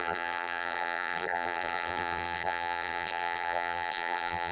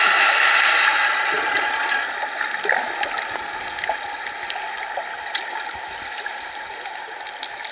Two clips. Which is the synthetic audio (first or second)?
first